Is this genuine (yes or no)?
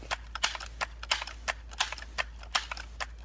yes